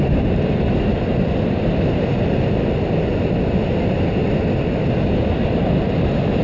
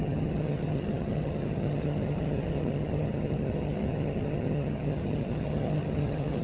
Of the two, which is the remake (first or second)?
second